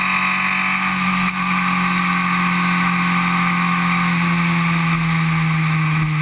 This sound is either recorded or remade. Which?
recorded